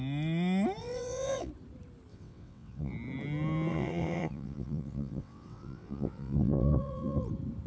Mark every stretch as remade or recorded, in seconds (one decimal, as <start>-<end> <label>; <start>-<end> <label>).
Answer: 0.0-0.8 recorded; 0.8-1.5 remade; 1.5-2.1 recorded; 2.1-2.9 remade; 2.9-3.7 recorded; 3.7-7.3 remade; 7.3-7.7 recorded